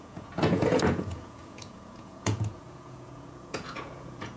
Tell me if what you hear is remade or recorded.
remade